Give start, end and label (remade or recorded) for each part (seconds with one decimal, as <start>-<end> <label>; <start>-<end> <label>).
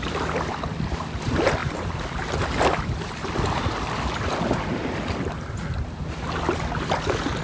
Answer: 0.0-7.4 recorded